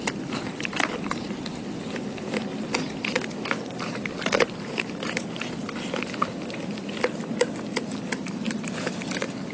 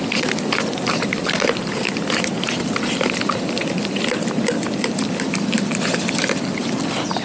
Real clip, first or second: first